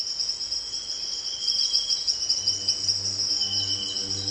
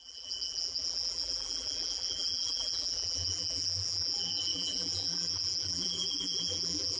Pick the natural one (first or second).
first